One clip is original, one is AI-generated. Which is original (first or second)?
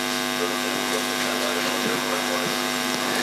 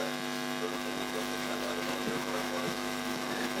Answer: first